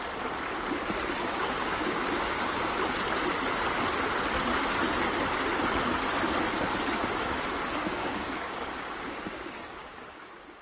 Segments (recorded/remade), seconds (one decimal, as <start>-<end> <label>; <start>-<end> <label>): 0.0-1.2 recorded; 1.2-2.7 remade; 2.7-7.8 recorded; 7.8-10.6 remade